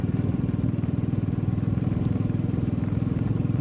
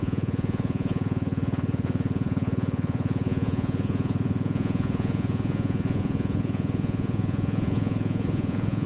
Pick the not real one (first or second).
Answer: second